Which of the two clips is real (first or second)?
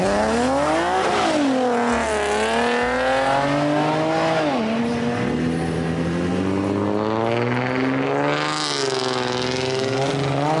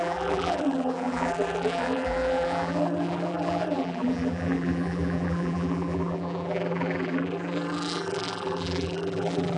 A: first